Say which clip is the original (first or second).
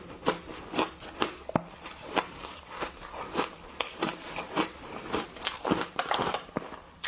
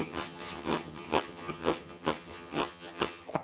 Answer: first